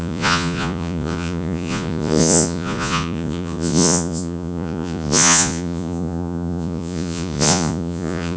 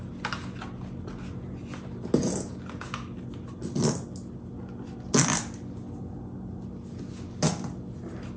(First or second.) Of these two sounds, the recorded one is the second